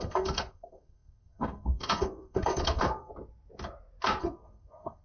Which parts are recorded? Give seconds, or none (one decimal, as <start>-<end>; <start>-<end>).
3.1-4.2